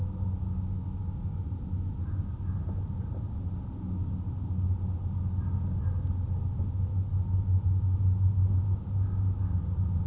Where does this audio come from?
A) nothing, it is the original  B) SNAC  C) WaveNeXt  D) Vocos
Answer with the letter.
A